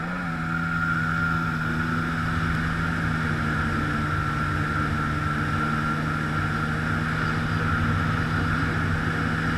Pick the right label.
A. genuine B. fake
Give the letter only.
A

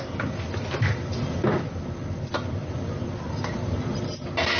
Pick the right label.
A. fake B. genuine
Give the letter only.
B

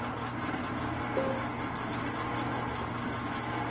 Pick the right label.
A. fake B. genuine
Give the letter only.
B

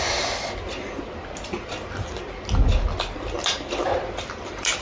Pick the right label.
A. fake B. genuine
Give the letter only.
B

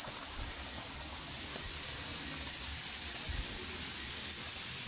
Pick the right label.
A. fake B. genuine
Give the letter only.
B